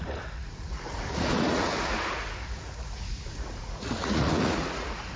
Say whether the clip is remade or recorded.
remade